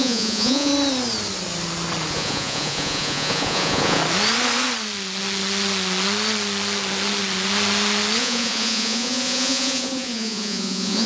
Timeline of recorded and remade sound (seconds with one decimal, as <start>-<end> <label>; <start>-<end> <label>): 0.0-0.7 remade; 0.7-2.1 recorded; 2.1-4.0 remade; 4.0-8.2 recorded; 8.2-11.1 remade